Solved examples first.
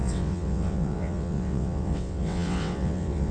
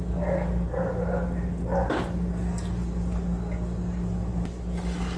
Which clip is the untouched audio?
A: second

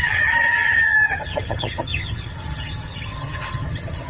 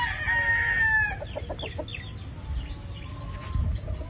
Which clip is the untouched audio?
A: second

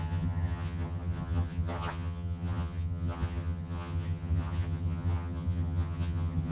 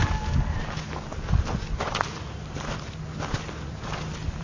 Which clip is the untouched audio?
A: second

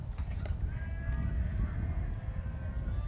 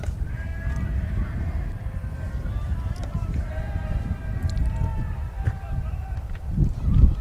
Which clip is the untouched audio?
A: first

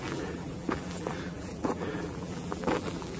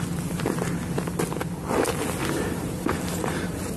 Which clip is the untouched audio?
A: second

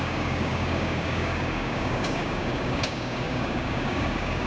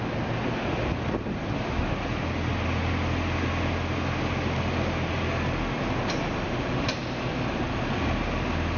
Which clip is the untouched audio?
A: second